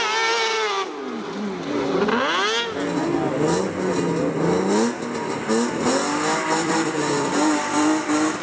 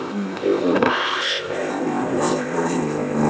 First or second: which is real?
first